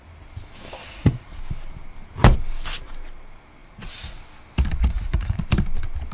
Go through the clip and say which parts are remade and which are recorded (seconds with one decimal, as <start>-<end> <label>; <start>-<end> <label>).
0.0-0.8 recorded; 0.8-1.4 remade; 1.4-3.6 recorded; 3.6-4.2 remade; 4.2-4.8 recorded; 4.8-5.4 remade; 5.4-6.1 recorded